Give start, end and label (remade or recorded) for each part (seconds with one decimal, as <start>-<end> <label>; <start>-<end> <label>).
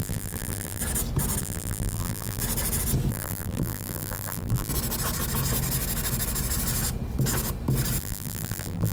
0.0-0.8 remade; 0.8-1.4 recorded; 1.4-2.4 remade; 2.4-3.1 recorded; 3.1-4.7 remade; 4.7-8.0 recorded; 8.0-8.9 remade